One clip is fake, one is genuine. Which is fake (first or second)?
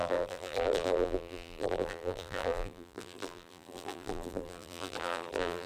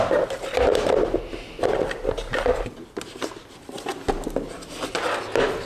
first